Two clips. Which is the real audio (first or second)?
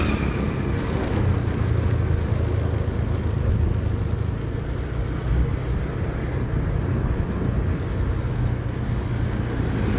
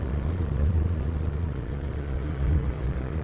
first